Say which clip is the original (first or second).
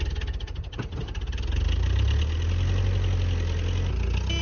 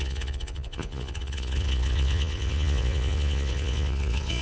first